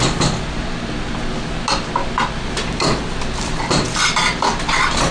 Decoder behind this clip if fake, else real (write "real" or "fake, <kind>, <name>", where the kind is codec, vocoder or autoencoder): real